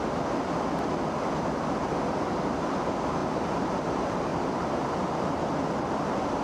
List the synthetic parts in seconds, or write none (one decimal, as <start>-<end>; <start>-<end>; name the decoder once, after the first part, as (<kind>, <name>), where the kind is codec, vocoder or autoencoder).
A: 3.2-3.9 (vocoder, BigVGAN v2); 4.3-5.4